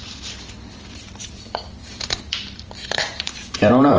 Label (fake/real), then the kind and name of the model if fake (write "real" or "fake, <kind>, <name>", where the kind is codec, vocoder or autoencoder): fake, vocoder, BigVGAN v2